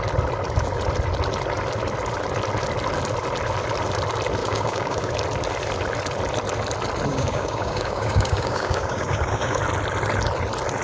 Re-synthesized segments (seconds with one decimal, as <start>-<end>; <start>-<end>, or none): 4.4-5.1; 7.1-9.6